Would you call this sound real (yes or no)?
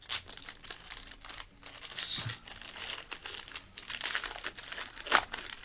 yes